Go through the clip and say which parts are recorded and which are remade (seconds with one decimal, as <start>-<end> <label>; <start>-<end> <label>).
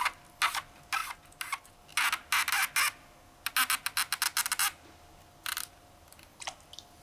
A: 0.0-7.0 recorded